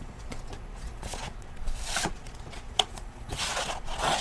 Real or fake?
fake